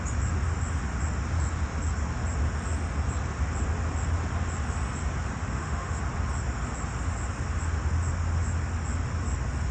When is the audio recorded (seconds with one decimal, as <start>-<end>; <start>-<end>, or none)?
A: 0.0-5.4; 6.0-9.7